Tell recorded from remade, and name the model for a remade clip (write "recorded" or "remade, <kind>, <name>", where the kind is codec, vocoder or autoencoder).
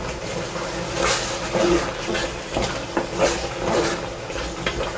recorded